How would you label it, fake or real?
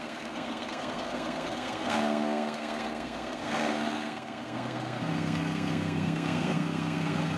fake